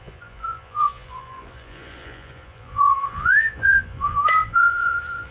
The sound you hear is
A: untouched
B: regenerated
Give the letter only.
B